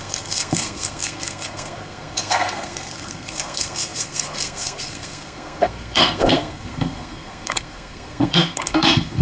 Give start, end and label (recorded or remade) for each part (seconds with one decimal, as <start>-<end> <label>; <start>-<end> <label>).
0.0-9.2 remade